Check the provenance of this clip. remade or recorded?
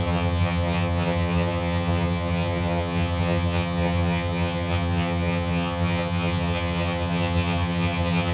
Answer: remade